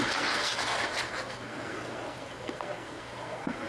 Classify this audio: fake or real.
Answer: fake